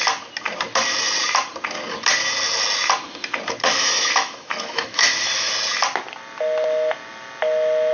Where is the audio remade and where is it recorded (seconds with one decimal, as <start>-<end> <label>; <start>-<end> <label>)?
0.0-3.7 recorded; 3.7-5.5 remade; 5.5-7.9 recorded